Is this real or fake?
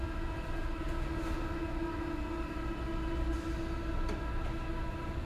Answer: real